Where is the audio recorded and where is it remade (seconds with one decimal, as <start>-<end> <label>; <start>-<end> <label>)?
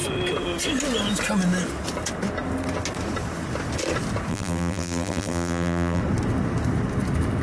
0.0-4.3 recorded; 4.3-6.0 remade; 6.0-7.4 recorded